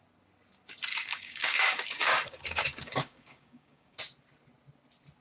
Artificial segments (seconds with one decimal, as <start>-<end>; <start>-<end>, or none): 0.9-4.0